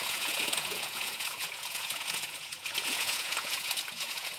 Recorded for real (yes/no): no